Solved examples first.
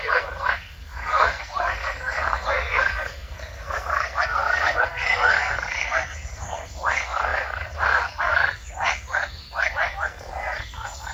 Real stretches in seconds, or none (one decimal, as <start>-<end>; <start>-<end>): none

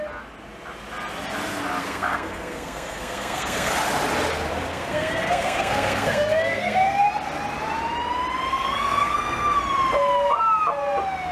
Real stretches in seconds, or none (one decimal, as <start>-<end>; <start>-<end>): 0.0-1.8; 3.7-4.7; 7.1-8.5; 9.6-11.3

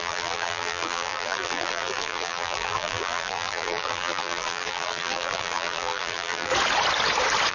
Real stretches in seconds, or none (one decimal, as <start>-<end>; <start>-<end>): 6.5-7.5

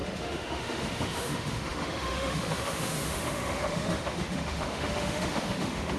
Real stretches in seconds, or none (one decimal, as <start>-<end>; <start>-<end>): none